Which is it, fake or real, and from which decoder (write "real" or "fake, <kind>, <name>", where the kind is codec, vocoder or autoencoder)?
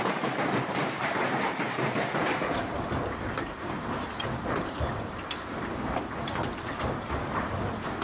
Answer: fake, vocoder, BigVGAN v2